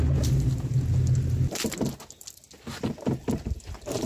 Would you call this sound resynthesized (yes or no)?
no